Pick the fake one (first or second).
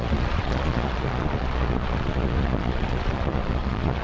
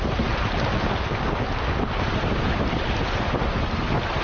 first